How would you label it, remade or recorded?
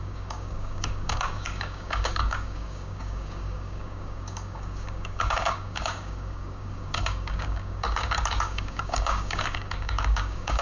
remade